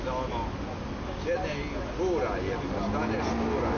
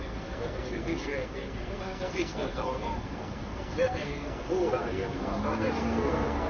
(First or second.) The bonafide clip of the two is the first